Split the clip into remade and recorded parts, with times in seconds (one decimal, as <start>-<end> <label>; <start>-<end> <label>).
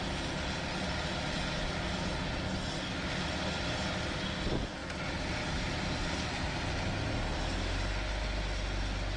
0.0-9.2 recorded